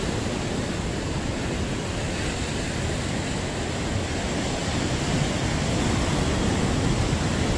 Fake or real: real